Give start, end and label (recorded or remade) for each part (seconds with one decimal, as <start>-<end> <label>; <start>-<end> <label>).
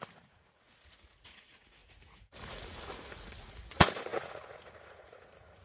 0.0-5.6 remade